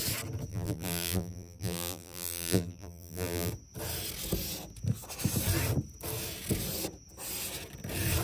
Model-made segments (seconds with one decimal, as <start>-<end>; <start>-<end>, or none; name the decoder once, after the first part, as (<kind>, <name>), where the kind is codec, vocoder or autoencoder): 0.5-3.5 (vocoder, BigVGAN v2)